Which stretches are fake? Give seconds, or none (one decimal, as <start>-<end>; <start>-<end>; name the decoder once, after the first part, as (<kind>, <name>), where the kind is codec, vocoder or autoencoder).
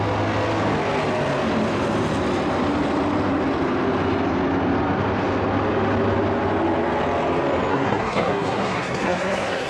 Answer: 7.7-9.7 (codec, SNAC)